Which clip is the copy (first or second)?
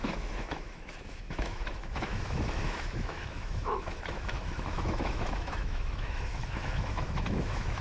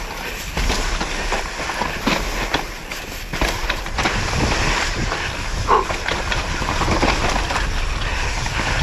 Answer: first